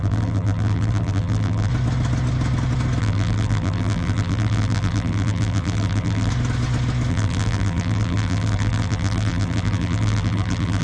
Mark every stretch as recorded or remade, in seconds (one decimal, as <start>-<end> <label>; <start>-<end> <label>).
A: 0.0-1.7 remade; 1.7-3.0 recorded; 3.0-6.3 remade; 6.3-7.1 recorded; 7.1-10.8 remade